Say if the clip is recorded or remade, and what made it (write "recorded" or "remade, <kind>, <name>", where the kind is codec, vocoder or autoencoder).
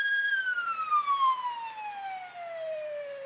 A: remade, vocoder, BigVGAN v2